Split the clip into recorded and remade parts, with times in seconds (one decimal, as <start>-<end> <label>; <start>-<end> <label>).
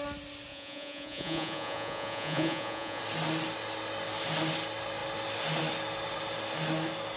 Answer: 0.0-0.5 recorded; 0.5-3.0 remade; 3.0-7.2 recorded